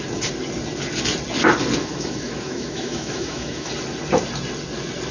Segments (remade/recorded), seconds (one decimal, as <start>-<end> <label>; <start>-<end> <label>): 0.0-1.8 recorded; 1.8-3.7 remade; 3.7-5.1 recorded